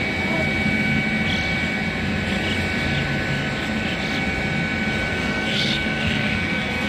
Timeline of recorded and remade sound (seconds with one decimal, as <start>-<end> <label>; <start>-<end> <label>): 0.0-5.1 recorded; 5.1-6.9 remade